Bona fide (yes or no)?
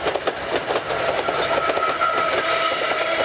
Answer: yes